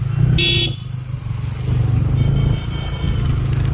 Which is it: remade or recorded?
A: recorded